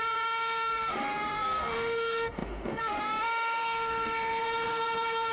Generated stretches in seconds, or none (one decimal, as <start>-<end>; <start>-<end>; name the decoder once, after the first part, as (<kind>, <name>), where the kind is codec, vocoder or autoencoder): 0.0-5.3 (autoencoder, DAC-VAE)